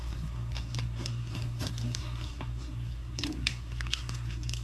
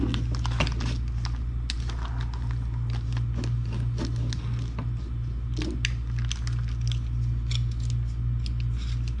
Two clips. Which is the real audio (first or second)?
second